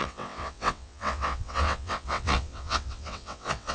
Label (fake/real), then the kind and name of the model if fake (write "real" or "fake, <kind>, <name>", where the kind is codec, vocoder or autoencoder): fake, vocoder, WaveNeXt